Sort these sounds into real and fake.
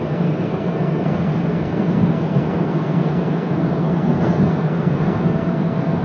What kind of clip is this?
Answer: fake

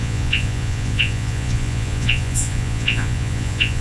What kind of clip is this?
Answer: fake